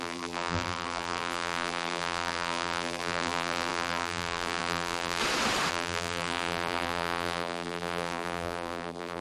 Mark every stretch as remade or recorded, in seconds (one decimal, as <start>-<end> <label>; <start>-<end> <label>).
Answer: 0.0-5.2 remade; 5.2-5.7 recorded; 5.7-9.2 remade